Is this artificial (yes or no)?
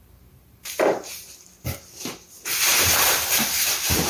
yes